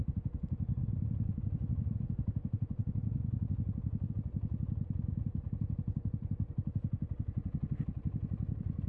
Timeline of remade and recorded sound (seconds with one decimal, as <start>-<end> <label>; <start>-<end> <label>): 0.0-8.9 recorded